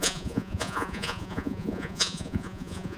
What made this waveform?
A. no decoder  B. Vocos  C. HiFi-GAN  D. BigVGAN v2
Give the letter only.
B